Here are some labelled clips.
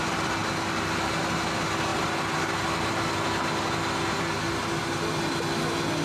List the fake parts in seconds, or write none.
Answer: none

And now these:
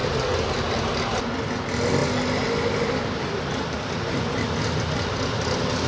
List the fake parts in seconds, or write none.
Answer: none

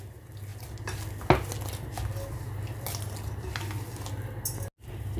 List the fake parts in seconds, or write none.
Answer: none

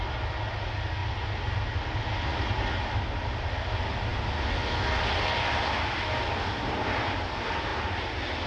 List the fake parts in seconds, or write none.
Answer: none

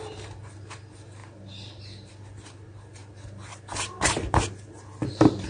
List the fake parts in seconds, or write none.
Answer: none

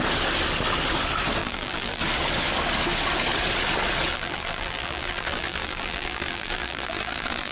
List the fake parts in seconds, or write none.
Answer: 1.4-2.0 (vocoder, BigVGAN v2); 4.1-7.5

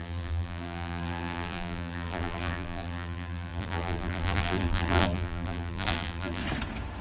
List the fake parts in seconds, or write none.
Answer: 0.0-6.4 (vocoder, BigVGAN v2)